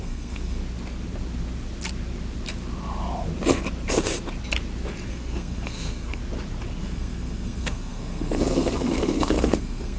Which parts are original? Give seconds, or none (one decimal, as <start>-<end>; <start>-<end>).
0.6-5.1; 6.2-6.8